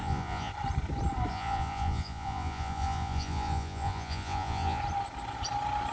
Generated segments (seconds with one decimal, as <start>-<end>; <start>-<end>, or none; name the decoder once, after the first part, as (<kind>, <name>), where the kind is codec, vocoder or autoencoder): 0.0-0.5 (vocoder, Vocos); 1.3-4.8